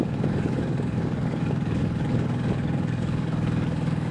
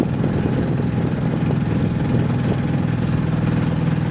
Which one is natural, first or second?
second